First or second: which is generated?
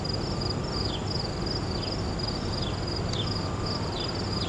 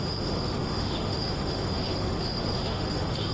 second